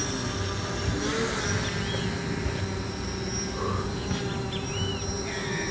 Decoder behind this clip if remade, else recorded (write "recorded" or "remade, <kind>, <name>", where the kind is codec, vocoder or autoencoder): recorded